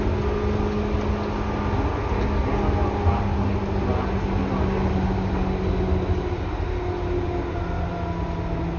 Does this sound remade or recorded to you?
recorded